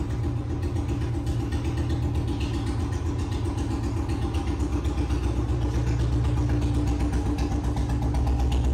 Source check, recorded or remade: recorded